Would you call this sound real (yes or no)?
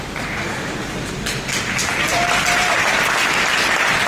yes